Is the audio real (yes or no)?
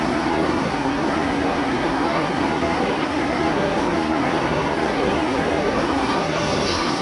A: no